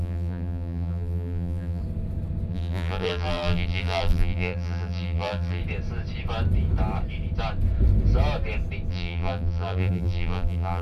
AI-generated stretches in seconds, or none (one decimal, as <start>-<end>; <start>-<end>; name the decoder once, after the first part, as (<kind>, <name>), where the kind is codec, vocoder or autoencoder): 0.0-1.8 (vocoder, BigVGAN v2); 2.5-5.6; 8.9-10.8